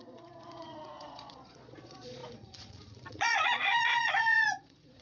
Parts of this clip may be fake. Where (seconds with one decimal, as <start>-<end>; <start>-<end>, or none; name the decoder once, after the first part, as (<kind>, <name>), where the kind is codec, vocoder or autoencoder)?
0.0-5.0 (vocoder, Vocos)